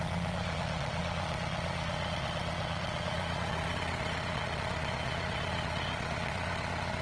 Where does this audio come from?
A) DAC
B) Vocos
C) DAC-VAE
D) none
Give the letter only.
B